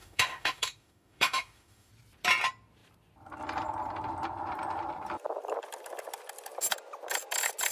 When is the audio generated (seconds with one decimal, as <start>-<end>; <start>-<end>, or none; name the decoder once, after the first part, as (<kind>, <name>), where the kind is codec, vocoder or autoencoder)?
0.0-1.9 (autoencoder, DAC-VAE)